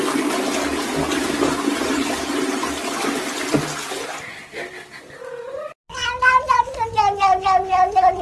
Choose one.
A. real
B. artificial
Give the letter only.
A